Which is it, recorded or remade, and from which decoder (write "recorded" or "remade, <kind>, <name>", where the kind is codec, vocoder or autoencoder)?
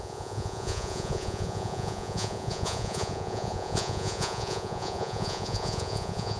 remade, vocoder, Vocos